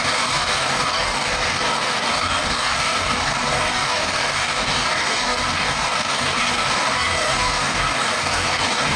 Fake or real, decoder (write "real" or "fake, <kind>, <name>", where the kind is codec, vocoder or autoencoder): fake, codec, DAC